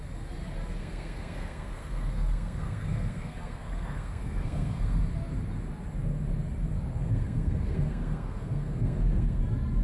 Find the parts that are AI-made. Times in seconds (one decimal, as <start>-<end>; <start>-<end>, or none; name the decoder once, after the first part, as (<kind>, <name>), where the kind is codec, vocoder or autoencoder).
0.8-5.0 (codec, SNAC); 6.9-9.4